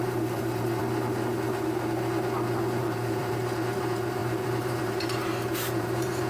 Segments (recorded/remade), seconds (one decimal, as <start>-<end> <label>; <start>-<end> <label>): 0.0-0.8 remade; 0.8-2.8 recorded; 2.8-5.2 remade; 5.2-5.8 recorded; 5.8-6.3 remade